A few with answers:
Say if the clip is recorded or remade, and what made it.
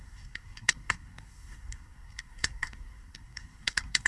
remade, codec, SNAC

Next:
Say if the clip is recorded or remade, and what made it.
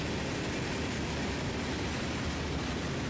recorded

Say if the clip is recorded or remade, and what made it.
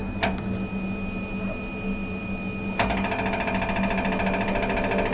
recorded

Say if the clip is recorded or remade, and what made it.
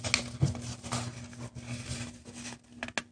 recorded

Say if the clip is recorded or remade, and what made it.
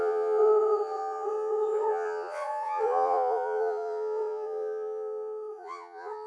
remade, vocoder, Vocos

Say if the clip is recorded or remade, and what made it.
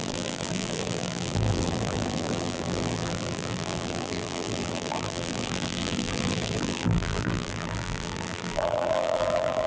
remade, vocoder, BigVGAN v2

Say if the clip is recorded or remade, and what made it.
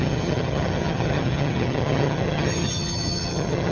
remade, vocoder, HiFi-GAN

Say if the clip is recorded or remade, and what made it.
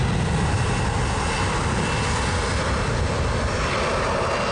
recorded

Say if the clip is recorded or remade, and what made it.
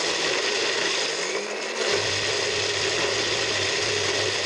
recorded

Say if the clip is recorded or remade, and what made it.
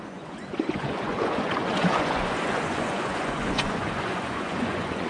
remade, vocoder, Vocos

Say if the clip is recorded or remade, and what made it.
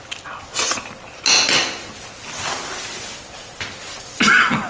recorded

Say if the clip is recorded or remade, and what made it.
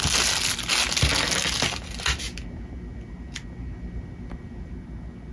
recorded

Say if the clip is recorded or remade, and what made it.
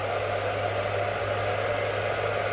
recorded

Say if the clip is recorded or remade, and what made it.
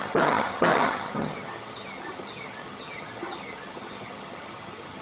remade, vocoder, HiFi-GAN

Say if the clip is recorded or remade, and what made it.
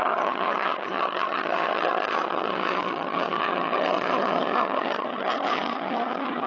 remade, vocoder, HiFi-GAN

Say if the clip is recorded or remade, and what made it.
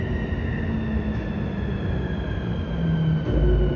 recorded